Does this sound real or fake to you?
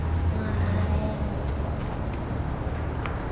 real